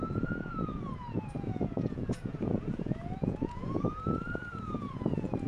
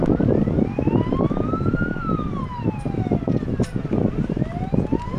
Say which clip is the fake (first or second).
first